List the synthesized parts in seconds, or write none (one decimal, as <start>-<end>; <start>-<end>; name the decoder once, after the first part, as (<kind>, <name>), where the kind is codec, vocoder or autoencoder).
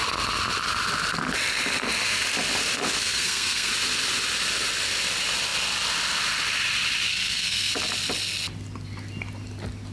3.0-3.7 (codec, SNAC); 7.1-7.7